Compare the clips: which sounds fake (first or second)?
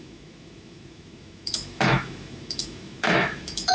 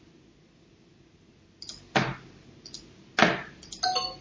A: first